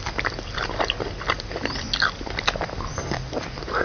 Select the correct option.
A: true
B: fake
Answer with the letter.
A